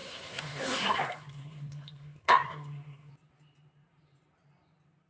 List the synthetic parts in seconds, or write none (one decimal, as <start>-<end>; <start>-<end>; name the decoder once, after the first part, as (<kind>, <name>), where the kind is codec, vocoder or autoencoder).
0.0-3.1 (codec, SNAC)